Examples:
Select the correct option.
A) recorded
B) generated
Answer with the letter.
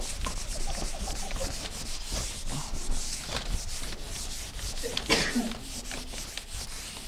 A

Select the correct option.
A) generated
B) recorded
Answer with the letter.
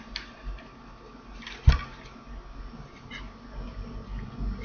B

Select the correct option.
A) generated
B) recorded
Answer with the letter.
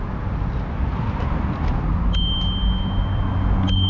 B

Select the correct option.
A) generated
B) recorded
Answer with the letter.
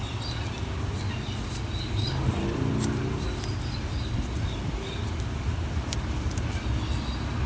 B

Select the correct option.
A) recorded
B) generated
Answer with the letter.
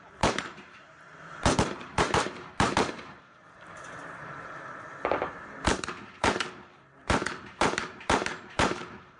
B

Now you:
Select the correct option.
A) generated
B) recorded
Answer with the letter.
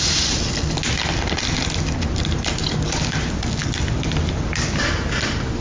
B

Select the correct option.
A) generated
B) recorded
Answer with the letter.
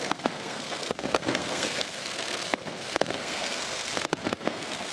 A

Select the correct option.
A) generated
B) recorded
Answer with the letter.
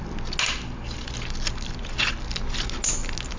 B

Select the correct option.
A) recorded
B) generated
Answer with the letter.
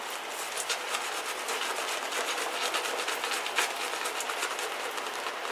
A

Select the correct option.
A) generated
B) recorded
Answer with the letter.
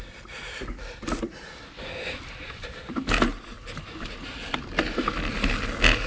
B